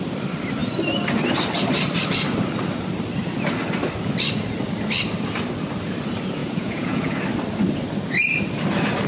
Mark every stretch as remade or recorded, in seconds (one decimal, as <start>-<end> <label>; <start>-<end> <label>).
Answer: 0.0-6.4 recorded; 6.4-7.2 remade; 7.2-9.1 recorded

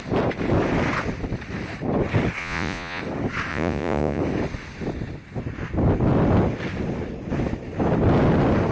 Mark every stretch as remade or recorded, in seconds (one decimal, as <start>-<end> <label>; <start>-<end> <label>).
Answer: 0.0-2.4 recorded; 2.4-3.0 remade; 3.0-3.5 recorded; 3.5-4.2 remade; 4.2-8.7 recorded

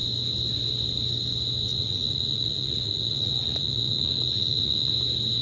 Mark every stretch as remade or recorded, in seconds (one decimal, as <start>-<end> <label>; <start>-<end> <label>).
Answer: 0.0-1.7 recorded; 1.7-4.9 remade; 4.9-5.4 recorded

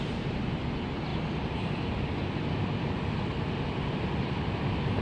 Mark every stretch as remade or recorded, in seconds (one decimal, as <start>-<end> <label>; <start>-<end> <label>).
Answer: 0.0-5.0 recorded

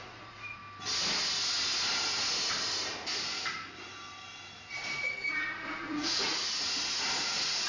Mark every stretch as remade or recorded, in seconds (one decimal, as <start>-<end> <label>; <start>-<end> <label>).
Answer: 0.0-0.6 remade; 0.6-4.7 recorded; 4.7-6.4 remade; 6.4-7.2 recorded; 7.2-7.7 remade

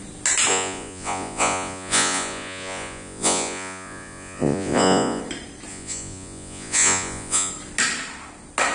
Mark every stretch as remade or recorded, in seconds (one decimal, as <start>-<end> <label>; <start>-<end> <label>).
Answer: 0.0-0.5 recorded; 0.5-5.2 remade; 5.2-5.7 recorded; 5.7-7.5 remade; 7.5-8.7 recorded